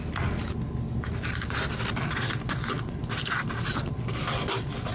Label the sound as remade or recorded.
recorded